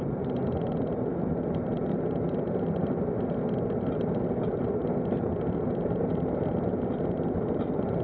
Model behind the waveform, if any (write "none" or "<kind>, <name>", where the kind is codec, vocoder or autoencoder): none